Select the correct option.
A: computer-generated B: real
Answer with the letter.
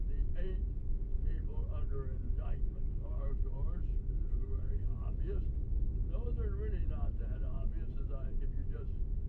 B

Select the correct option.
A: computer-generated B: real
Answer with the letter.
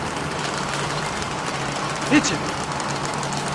B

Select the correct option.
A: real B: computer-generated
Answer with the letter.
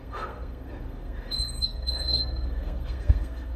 B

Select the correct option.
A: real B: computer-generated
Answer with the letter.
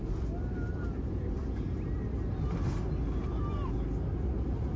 A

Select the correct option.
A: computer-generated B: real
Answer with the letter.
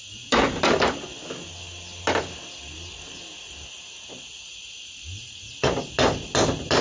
B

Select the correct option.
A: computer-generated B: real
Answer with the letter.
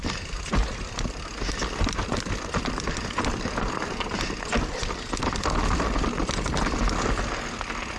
B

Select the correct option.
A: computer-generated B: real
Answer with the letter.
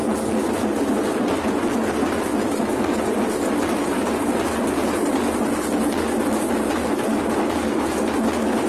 B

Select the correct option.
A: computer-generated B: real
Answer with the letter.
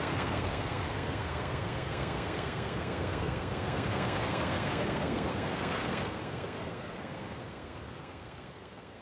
A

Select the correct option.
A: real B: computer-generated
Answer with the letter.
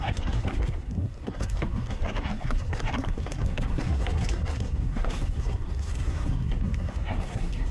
B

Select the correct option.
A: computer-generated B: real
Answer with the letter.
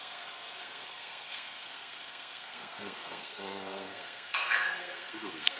A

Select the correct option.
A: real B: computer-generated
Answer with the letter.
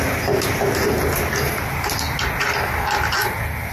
A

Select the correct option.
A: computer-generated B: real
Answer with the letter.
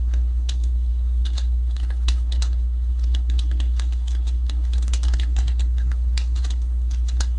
A